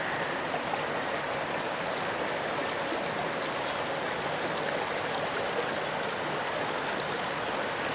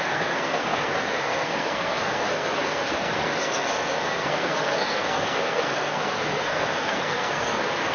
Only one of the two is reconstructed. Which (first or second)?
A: second